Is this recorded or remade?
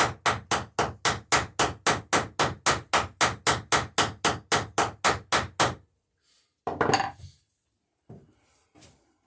recorded